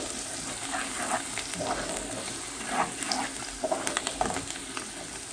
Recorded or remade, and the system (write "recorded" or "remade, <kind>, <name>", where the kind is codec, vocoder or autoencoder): recorded